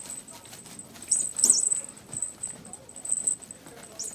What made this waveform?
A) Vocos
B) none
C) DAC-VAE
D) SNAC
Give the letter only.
B